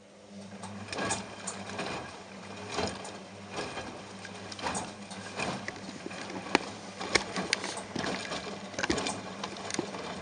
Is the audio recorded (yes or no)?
yes